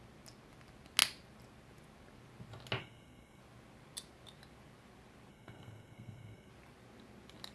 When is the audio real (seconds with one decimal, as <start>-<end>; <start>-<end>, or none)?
0.0-2.8; 3.4-5.3; 6.5-7.5